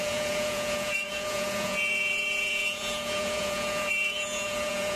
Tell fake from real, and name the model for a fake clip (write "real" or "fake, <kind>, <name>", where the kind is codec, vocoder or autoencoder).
fake, vocoder, Vocos